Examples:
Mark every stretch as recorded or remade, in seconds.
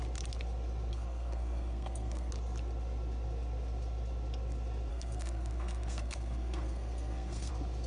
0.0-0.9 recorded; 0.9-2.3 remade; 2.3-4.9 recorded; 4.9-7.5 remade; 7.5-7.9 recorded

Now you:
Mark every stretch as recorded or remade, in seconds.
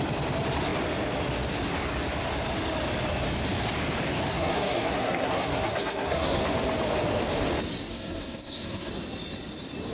0.0-4.3 recorded; 4.3-6.4 remade; 6.4-7.9 recorded; 7.9-8.9 remade; 8.9-9.9 recorded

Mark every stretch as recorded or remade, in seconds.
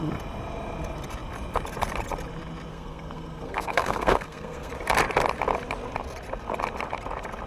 0.0-2.7 recorded; 2.7-4.7 remade; 4.7-7.5 recorded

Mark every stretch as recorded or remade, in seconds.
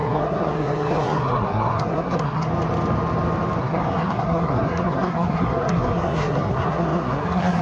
0.0-2.5 remade; 2.5-3.6 recorded; 3.6-7.6 remade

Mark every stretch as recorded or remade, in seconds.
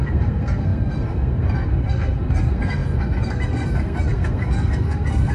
0.0-5.3 remade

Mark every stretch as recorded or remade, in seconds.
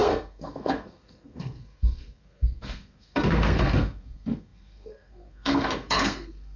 0.0-6.6 remade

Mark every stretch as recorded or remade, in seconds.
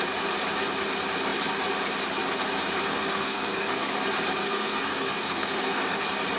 0.0-2.9 recorded; 2.9-4.0 remade; 4.0-4.4 recorded; 4.4-6.0 remade; 6.0-6.4 recorded